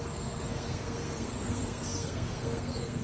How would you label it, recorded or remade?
remade